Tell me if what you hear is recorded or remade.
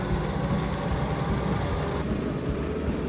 recorded